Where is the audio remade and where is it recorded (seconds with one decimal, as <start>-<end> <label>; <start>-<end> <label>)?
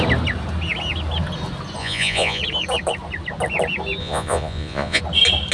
0.0-1.8 recorded; 1.8-2.4 remade; 2.4-4.0 recorded; 4.0-5.0 remade; 5.0-5.5 recorded